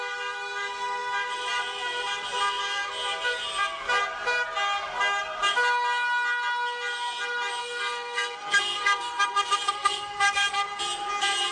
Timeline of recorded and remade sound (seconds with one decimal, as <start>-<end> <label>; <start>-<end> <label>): 0.0-7.6 recorded; 7.6-10.8 remade; 10.8-11.5 recorded